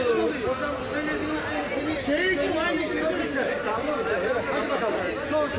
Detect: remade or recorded recorded